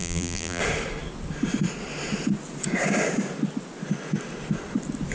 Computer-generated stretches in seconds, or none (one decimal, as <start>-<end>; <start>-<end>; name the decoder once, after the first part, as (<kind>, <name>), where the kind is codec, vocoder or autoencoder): 0.0-0.6 (vocoder, BigVGAN v2)